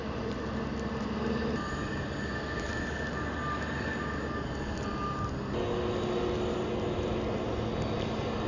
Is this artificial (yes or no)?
no